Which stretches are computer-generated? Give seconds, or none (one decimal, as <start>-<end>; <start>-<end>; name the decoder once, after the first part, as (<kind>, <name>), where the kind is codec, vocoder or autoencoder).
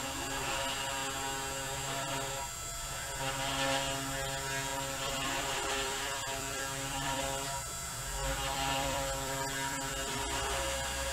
4.7-7.2 (vocoder, BigVGAN v2); 8.2-10.2